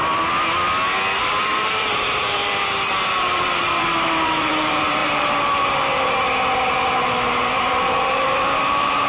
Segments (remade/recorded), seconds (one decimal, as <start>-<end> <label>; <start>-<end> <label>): 0.0-1.2 recorded; 1.2-9.1 remade